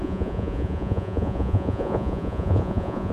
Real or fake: fake